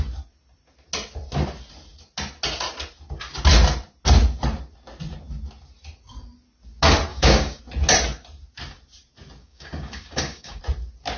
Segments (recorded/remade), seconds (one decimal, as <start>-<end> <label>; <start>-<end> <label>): 0.0-7.1 recorded; 7.1-7.6 remade; 7.6-9.4 recorded; 9.4-10.6 remade; 10.6-11.2 recorded